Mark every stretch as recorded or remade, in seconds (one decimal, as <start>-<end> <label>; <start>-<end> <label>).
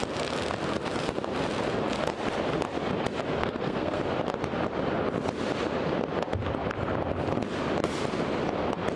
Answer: 0.0-3.4 recorded; 3.4-4.0 remade; 4.0-9.0 recorded